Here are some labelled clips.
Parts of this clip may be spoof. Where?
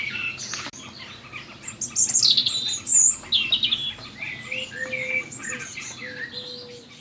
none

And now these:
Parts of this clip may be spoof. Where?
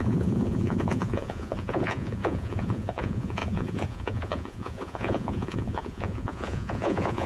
0.0-7.3 (vocoder, Vocos)